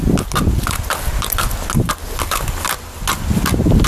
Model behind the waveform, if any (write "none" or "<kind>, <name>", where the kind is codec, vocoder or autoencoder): none